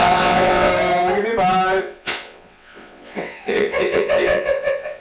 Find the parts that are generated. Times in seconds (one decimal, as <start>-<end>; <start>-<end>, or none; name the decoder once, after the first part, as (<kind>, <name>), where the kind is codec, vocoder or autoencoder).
0.0-0.7 (vocoder, WaveNeXt); 1.8-5.0